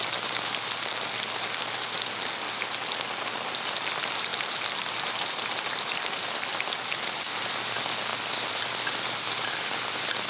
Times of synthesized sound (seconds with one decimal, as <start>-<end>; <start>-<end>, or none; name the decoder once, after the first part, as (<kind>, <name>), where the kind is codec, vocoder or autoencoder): none